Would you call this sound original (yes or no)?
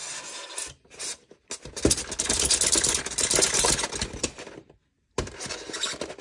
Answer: yes